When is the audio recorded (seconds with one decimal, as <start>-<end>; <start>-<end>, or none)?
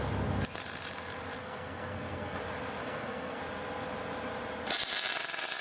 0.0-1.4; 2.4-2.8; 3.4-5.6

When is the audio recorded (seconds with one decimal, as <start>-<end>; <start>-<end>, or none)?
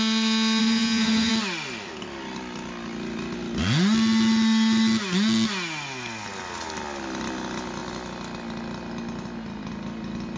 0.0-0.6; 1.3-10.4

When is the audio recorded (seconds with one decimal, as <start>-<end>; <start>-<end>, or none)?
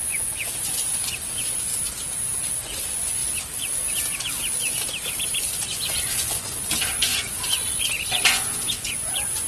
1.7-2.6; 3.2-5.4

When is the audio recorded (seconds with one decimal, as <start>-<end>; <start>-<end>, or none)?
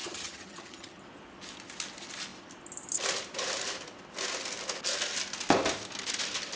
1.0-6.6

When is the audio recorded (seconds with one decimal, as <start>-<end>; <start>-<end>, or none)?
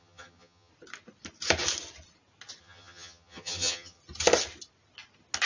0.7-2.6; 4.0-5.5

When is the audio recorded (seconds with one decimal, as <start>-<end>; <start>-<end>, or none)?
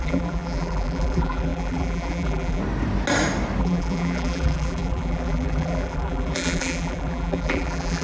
2.6-3.6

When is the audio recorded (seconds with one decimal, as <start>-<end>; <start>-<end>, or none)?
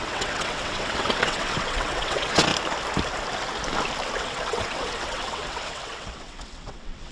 2.5-4.2